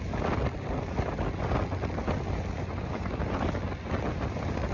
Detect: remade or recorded recorded